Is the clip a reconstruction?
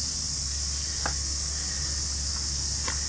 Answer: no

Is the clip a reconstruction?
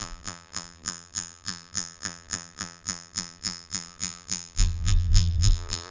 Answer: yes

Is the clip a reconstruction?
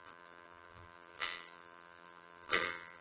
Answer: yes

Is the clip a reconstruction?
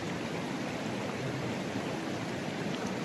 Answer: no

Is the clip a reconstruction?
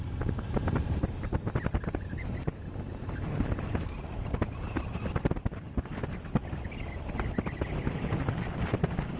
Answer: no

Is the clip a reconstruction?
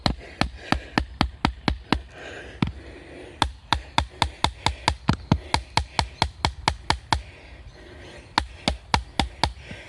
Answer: no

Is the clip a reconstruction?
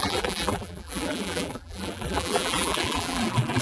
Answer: yes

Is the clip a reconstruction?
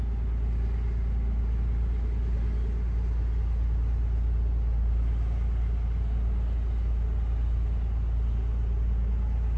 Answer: no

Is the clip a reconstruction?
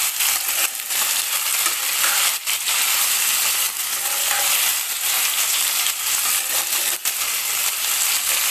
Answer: no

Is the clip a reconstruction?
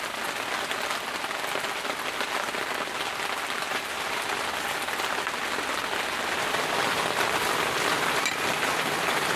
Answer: no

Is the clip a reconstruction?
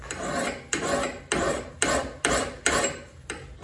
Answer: yes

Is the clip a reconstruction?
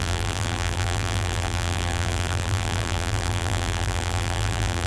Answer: yes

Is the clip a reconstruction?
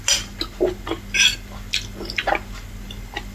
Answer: no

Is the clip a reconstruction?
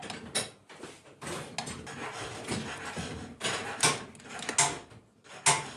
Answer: no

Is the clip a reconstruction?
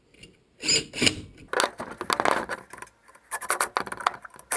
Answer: no